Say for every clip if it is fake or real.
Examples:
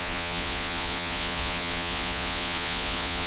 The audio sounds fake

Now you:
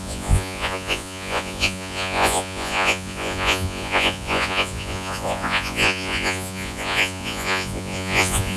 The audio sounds fake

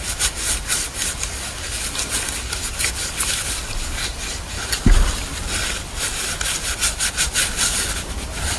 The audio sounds real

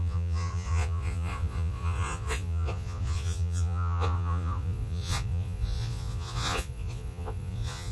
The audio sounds fake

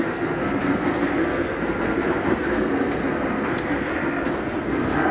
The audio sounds fake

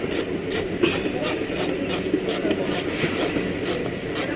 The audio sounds real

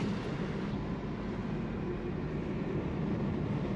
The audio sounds real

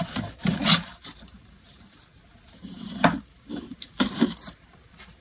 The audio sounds fake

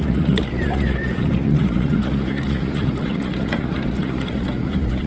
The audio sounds fake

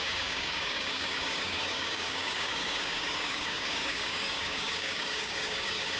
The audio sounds fake